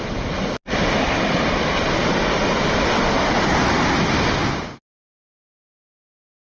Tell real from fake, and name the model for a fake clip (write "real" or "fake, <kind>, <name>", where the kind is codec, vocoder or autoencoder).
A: real